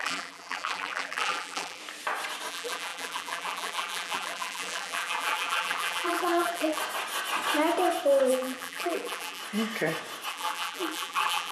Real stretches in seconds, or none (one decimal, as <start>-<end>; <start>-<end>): 1.8-2.5; 6.8-8.3; 9.4-10.3